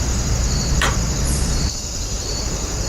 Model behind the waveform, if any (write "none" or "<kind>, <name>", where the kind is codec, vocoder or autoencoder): vocoder, BigVGAN v2